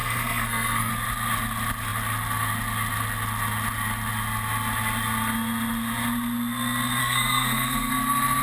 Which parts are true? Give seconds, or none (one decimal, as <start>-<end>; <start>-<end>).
0.9-7.0; 7.9-8.4